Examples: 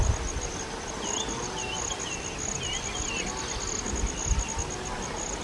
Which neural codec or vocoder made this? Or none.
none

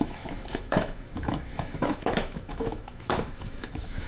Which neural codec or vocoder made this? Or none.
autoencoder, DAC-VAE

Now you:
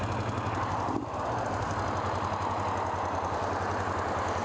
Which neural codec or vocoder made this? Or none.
none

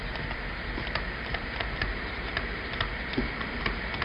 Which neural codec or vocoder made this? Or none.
none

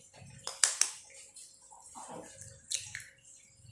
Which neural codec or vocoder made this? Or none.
none